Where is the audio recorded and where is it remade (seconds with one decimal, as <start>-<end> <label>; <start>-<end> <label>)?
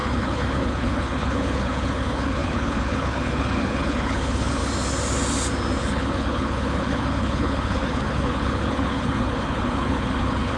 0.0-4.6 remade; 4.6-5.8 recorded; 5.8-10.6 remade